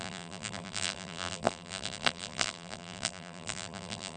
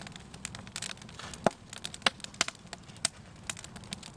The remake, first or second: first